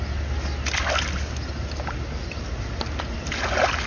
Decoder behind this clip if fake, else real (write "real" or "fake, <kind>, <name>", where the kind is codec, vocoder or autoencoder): real